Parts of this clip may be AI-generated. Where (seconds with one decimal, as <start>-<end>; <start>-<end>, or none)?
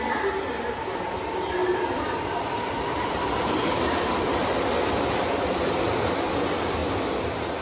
none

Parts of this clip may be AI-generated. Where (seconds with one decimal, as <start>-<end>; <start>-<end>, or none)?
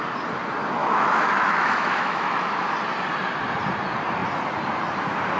0.8-2.7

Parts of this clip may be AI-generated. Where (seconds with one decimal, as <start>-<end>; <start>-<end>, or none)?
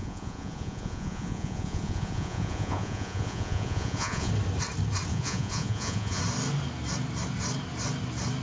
0.0-4.3; 5.1-6.2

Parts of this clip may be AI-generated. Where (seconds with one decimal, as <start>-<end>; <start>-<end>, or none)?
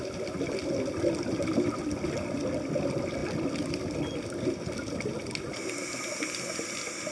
none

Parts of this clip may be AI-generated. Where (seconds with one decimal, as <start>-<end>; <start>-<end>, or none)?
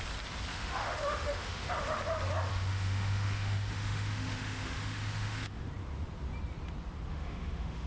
0.5-1.7; 2.5-5.7; 7.1-7.9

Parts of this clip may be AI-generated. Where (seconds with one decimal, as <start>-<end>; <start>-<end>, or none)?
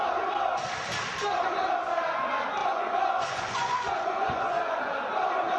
2.6-4.8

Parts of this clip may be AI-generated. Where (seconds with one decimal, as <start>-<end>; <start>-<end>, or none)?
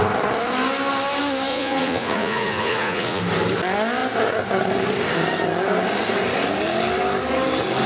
1.5-3.2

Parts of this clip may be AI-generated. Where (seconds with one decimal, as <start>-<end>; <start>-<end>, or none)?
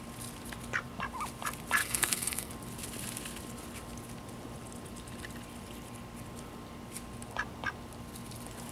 1.8-2.5